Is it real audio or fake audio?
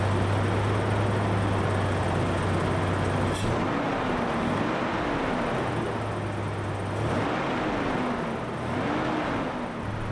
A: real